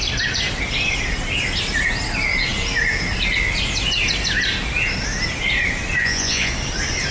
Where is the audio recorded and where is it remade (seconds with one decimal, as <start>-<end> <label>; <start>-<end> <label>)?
0.0-6.0 recorded; 6.0-6.5 remade; 6.5-7.1 recorded

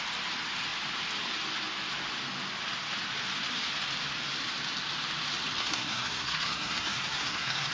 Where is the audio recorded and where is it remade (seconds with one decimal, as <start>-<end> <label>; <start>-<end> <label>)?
0.0-5.6 recorded; 5.6-7.7 remade